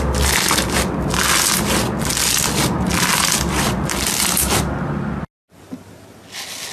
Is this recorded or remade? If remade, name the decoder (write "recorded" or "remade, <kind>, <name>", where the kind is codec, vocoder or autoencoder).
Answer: recorded